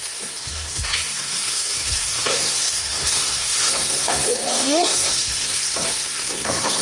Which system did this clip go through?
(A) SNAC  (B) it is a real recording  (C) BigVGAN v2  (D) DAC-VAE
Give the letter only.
A